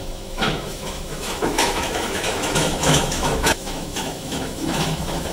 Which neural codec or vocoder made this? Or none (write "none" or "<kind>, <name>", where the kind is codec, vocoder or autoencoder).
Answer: autoencoder, DAC-VAE